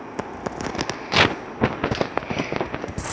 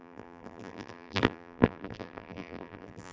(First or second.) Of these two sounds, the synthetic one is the second